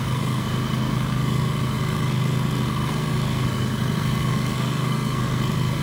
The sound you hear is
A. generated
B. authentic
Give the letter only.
A